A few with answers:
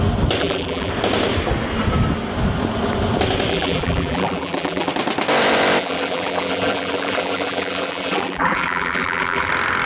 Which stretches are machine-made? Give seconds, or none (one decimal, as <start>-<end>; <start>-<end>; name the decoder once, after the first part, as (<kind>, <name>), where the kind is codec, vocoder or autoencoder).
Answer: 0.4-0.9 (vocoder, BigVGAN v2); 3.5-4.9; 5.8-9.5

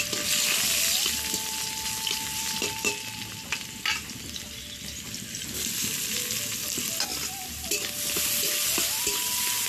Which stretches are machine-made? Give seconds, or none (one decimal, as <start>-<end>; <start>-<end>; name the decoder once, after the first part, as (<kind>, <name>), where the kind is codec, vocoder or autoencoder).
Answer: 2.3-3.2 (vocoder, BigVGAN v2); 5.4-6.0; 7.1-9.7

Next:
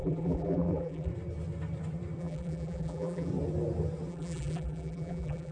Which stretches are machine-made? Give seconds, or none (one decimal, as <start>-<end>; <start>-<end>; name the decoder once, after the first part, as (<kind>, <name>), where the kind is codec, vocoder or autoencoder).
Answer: 0.0-1.1 (vocoder, BigVGAN v2); 2.2-3.3; 4.1-5.5

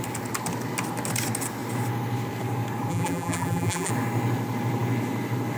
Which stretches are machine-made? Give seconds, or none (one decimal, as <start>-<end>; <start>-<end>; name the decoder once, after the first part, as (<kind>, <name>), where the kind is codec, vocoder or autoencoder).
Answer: 2.9-3.9 (vocoder, BigVGAN v2)